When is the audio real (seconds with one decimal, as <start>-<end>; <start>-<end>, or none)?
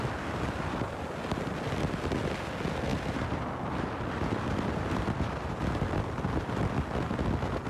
0.0-2.9; 6.7-7.7